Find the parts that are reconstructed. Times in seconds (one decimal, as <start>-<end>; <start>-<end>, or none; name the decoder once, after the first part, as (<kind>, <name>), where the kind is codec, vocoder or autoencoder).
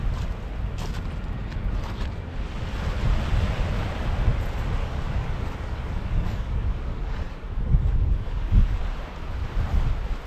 4.8-8.8 (codec, DAC)